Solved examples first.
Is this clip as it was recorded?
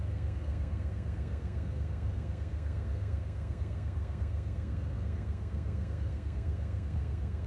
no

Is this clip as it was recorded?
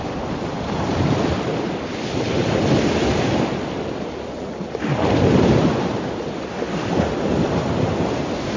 yes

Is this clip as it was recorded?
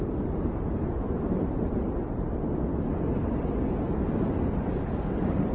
yes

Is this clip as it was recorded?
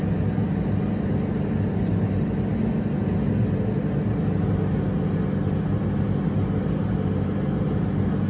yes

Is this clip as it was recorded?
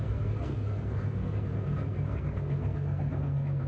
no